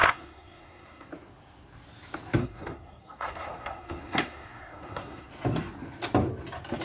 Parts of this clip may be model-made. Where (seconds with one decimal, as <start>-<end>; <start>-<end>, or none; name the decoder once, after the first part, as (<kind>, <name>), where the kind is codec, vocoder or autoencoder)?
0.0-1.1 (codec, SNAC); 2.4-5.3